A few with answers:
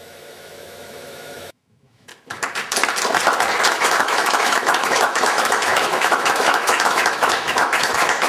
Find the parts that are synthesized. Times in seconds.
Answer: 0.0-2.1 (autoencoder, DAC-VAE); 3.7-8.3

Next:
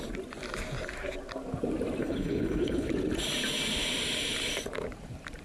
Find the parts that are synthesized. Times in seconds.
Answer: 2.0-2.9 (codec, HILCodec)

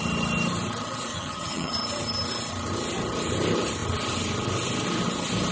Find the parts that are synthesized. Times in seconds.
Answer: 1.1-1.7 (vocoder, HiFi-GAN)

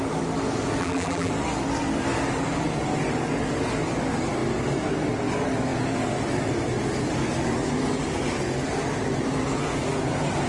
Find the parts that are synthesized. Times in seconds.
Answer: 0.8-1.3 (vocoder, BigVGAN v2)

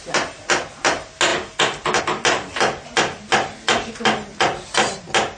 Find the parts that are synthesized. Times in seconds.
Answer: none

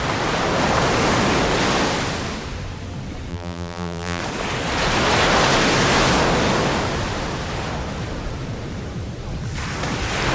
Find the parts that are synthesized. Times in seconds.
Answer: 3.3-4.2 (vocoder, BigVGAN v2)